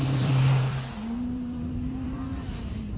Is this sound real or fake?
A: fake